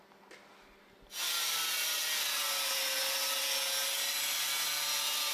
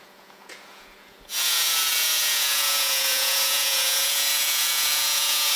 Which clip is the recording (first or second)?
first